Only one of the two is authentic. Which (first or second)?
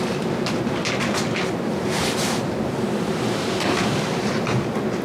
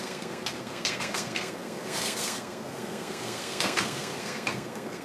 first